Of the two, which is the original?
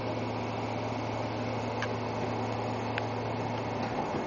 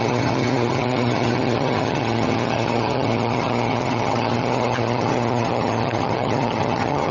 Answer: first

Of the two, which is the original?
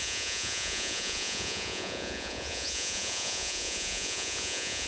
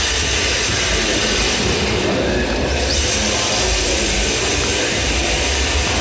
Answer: second